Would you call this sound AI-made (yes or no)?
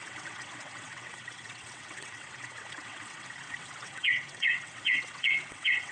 yes